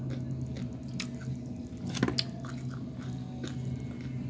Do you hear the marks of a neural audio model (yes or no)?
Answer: no